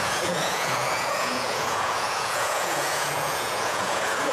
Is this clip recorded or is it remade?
remade